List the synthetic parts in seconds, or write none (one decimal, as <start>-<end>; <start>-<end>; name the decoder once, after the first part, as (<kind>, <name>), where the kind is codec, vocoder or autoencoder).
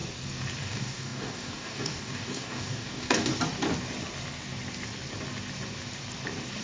0.6-3.3 (codec, DAC)